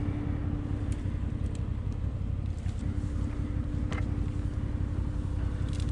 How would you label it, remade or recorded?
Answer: recorded